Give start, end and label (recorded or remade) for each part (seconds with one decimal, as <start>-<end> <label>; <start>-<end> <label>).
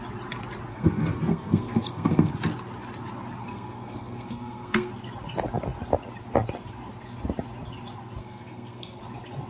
0.0-0.7 recorded; 0.7-2.3 remade; 2.3-3.4 recorded; 3.4-4.9 remade; 4.9-8.2 recorded; 8.2-9.0 remade; 9.0-9.5 recorded